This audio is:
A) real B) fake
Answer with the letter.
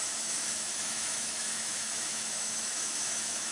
B